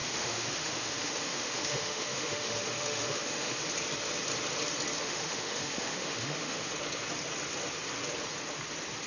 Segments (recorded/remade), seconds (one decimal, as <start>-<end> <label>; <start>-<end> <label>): 0.0-3.6 remade; 3.6-5.0 recorded; 5.0-6.7 remade; 6.7-9.1 recorded